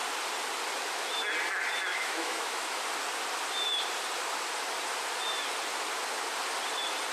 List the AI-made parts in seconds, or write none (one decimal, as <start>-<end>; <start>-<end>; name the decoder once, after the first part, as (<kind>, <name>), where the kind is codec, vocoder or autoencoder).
1.9-2.8 (autoencoder, DAC-VAE)